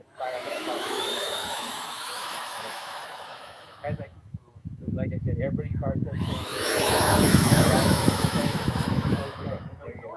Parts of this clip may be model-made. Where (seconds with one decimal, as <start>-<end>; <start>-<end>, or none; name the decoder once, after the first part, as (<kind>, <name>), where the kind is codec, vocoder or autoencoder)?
0.0-10.2 (autoencoder, DAC-VAE)